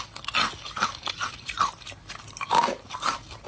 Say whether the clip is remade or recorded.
recorded